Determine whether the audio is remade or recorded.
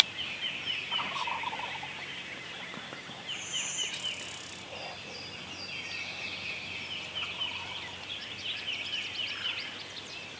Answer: recorded